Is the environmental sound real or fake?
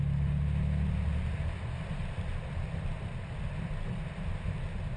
real